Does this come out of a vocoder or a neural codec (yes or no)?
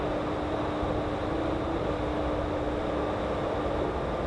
no